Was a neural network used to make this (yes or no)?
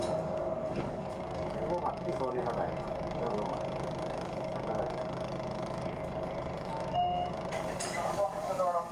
yes